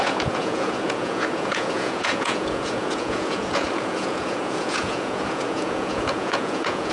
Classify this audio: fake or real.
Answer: fake